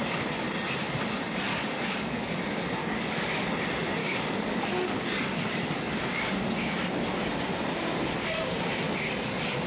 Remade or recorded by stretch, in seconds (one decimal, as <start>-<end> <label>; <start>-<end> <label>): 0.0-1.5 recorded; 1.5-2.4 remade; 2.4-2.8 recorded; 2.8-3.3 remade; 3.3-4.0 recorded; 4.0-6.0 remade; 6.0-9.7 recorded